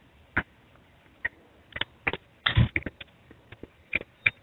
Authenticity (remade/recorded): recorded